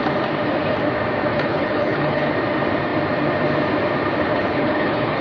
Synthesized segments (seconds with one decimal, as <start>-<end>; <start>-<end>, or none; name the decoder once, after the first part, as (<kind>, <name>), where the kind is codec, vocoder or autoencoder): 1.3-2.3 (codec, HILCodec); 4.3-5.2